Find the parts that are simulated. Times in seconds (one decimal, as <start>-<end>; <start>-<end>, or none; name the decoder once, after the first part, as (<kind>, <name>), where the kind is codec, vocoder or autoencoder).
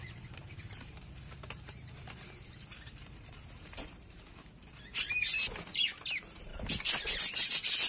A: 0.0-6.5 (vocoder, BigVGAN v2)